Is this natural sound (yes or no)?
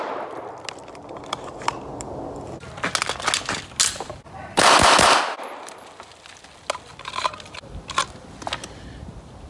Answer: yes